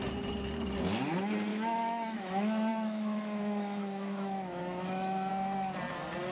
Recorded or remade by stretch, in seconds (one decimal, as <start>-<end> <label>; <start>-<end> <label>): 0.0-1.5 recorded; 1.5-5.3 remade; 5.3-6.3 recorded